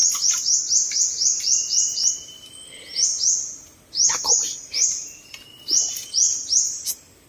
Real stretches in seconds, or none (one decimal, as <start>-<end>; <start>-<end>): 0.0-7.3